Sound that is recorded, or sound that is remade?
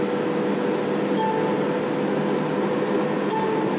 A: recorded